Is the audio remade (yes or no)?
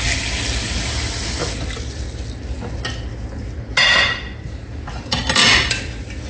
no